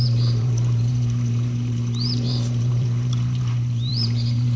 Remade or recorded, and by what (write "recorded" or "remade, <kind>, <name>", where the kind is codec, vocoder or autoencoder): remade, vocoder, BigVGAN v2